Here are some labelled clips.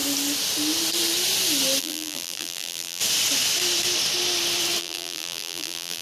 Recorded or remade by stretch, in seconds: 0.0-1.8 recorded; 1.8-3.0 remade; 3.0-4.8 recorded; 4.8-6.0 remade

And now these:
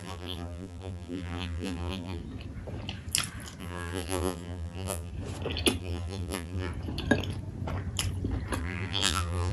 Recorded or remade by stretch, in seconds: 0.0-2.2 remade; 2.2-3.6 recorded; 3.6-5.1 remade; 5.1-5.8 recorded; 5.8-6.7 remade; 6.7-8.6 recorded; 8.6-9.5 remade

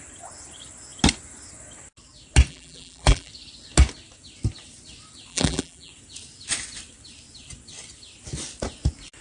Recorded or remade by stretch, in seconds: 0.0-2.5 recorded; 2.5-3.3 remade; 3.3-5.3 recorded; 5.3-5.9 remade; 5.9-9.2 recorded

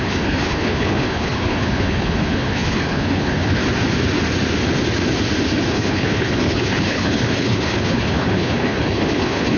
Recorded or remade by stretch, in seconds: 0.0-3.6 remade; 3.6-5.7 recorded; 5.7-9.6 remade

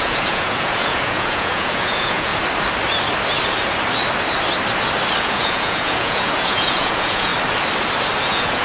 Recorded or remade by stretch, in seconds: 0.0-2.3 remade; 2.3-5.2 recorded; 5.2-7.3 remade; 7.3-8.2 recorded; 8.2-8.6 remade